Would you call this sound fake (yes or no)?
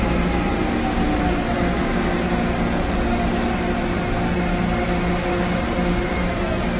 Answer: no